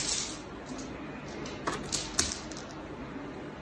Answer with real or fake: real